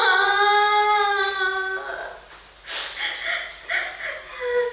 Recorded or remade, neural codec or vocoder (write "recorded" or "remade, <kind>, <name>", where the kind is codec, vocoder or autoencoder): recorded